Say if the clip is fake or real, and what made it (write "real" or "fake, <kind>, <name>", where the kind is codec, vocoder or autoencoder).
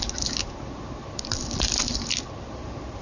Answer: real